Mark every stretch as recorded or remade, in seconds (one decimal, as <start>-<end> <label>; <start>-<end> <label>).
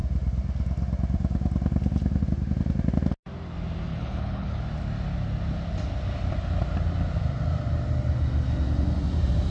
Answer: 0.0-3.9 recorded; 3.9-4.6 remade; 4.6-9.5 recorded